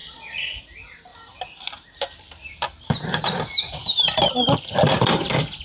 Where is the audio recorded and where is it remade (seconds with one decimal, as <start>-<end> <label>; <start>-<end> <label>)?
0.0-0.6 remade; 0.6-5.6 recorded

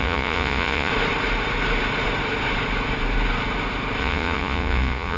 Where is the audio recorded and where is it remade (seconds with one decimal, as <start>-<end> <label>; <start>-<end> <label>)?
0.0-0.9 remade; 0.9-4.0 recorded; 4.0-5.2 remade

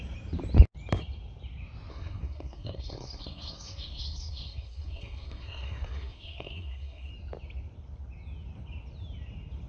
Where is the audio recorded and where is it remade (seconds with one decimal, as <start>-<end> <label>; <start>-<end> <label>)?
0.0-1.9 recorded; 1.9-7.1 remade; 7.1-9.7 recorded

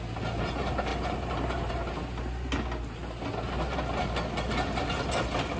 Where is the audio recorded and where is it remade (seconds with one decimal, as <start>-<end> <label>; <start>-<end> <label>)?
0.0-0.9 recorded; 0.9-1.7 remade; 1.7-5.6 recorded